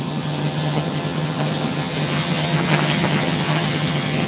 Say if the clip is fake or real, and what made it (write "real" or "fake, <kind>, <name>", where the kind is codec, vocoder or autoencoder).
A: fake, vocoder, HiFi-GAN